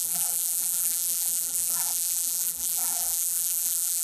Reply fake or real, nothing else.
fake